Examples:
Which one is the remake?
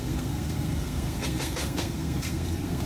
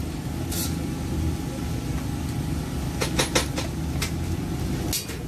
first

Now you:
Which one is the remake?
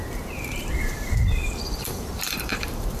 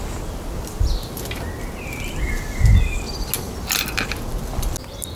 first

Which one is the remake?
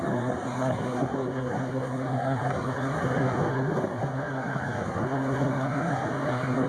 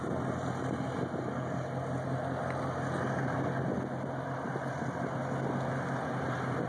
first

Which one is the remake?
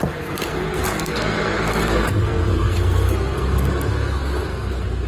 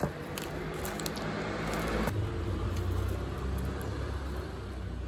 first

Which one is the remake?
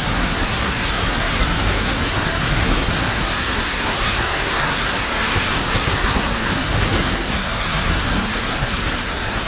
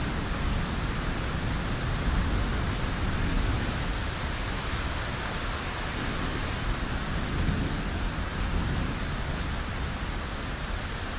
first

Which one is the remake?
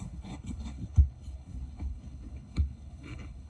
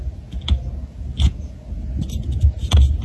first